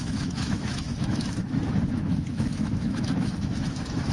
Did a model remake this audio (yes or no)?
yes